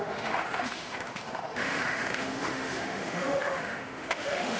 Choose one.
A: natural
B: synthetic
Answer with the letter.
B